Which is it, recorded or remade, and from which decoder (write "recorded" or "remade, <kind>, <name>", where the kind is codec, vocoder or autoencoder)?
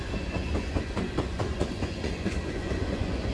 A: remade, vocoder, Vocos